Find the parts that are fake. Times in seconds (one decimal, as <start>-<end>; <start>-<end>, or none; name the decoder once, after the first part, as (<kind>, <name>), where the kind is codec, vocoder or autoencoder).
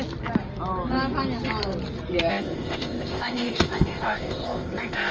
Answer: 2.3-5.1 (codec, ZipCodec)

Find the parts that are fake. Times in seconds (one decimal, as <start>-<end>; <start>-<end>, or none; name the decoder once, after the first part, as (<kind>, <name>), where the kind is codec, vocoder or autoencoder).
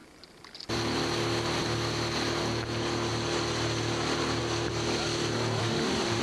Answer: 5.6-6.2 (autoencoder, DAC-VAE)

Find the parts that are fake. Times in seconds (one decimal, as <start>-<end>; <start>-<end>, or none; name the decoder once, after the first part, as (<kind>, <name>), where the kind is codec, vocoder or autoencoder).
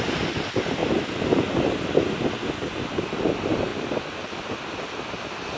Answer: none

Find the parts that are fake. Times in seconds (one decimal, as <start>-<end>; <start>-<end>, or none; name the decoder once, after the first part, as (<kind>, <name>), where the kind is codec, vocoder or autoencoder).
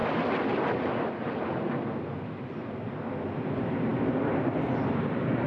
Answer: none